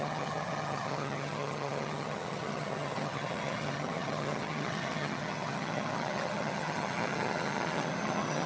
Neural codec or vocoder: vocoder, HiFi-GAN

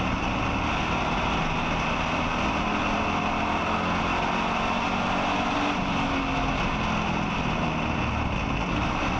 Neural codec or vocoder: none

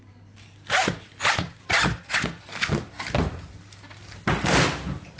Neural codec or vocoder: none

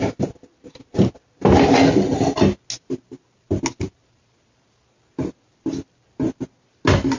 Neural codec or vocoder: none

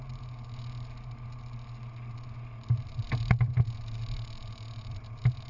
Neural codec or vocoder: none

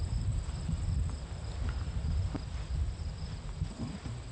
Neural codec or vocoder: none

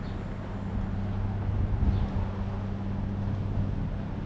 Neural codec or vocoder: none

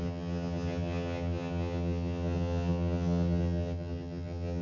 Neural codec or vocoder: vocoder, HiFi-GAN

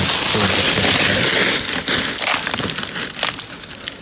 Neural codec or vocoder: none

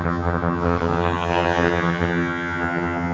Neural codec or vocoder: vocoder, HiFi-GAN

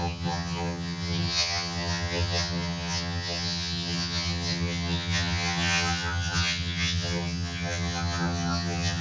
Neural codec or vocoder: vocoder, HiFi-GAN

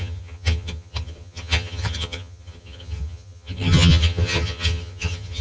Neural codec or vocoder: vocoder, HiFi-GAN